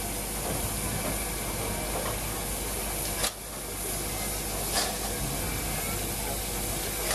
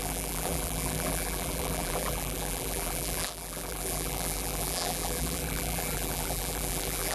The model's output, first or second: second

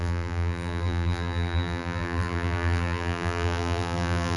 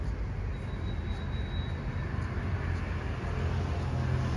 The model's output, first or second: first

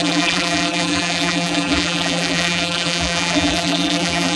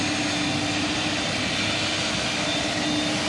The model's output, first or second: first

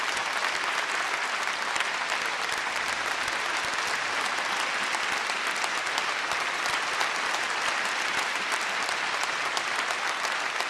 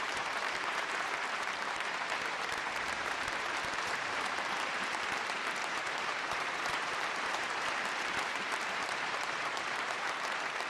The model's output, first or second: second